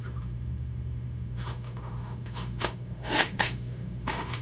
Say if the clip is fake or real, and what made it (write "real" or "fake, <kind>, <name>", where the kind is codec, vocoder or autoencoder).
fake, autoencoder, DAC-VAE